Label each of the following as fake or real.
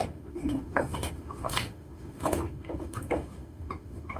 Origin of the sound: fake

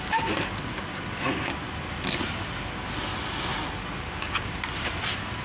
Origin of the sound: real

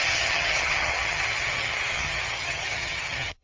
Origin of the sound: fake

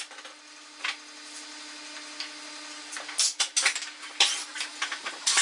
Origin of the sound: real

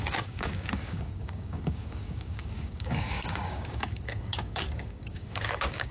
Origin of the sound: fake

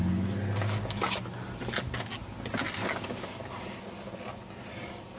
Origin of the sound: real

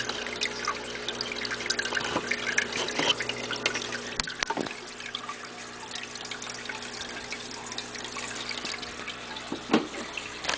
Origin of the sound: real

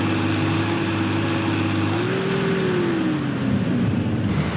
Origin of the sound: real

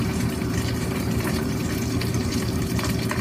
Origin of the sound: fake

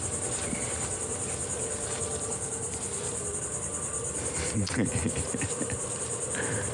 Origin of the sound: fake